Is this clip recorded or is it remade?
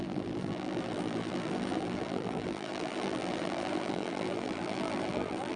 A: remade